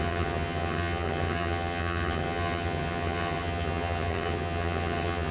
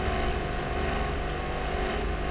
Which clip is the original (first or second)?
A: second